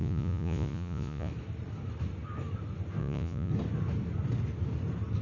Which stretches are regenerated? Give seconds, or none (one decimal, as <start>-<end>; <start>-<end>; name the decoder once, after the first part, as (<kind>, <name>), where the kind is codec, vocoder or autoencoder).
0.0-1.3 (vocoder, Vocos); 3.0-3.5